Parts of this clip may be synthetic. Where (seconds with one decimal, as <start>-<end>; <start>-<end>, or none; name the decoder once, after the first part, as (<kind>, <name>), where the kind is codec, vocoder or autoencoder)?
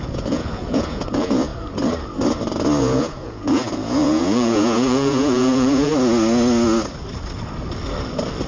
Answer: 0.0-1.5 (vocoder, Vocos); 2.8-5.9